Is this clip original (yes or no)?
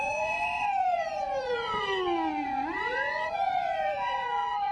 no